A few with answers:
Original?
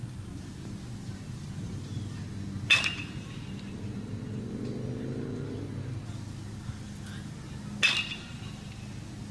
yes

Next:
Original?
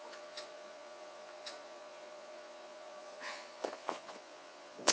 no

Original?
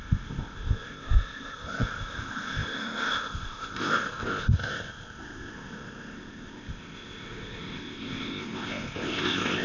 no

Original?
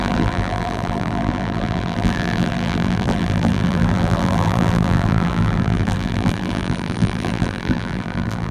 no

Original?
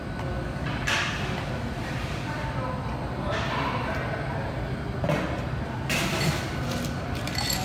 yes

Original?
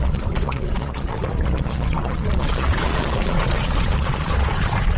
no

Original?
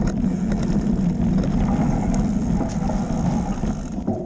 yes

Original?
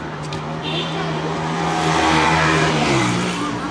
no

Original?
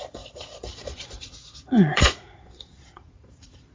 no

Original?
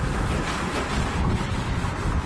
yes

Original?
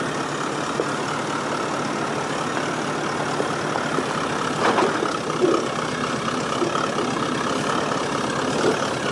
yes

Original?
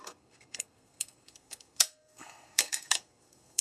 no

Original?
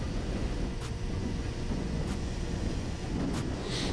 no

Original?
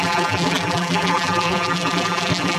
no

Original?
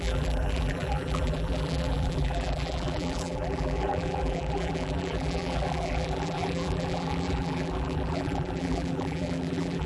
no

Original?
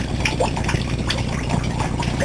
yes